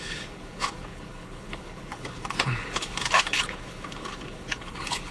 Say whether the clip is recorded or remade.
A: remade